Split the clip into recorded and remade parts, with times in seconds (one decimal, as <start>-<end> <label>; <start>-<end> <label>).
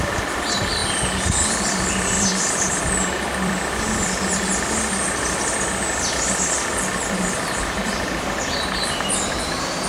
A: 0.0-9.9 remade